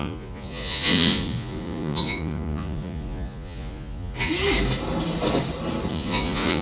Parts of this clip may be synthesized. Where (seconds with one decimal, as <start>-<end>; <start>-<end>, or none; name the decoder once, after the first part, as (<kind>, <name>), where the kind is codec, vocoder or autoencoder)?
0.0-4.3 (vocoder, Vocos); 5.9-6.6